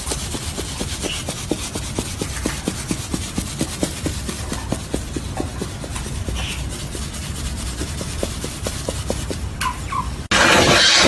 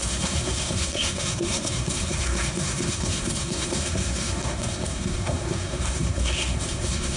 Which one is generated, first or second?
second